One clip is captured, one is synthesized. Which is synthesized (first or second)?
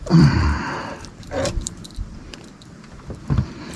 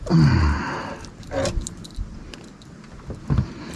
first